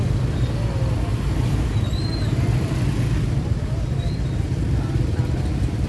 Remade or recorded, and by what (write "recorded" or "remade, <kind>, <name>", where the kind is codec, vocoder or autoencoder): recorded